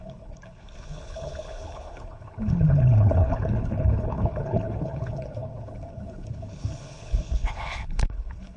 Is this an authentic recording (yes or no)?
no